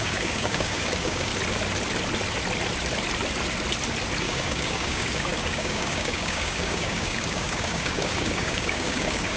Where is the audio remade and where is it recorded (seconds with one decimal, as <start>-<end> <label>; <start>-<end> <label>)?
0.0-1.3 remade; 1.3-4.2 recorded; 4.2-9.4 remade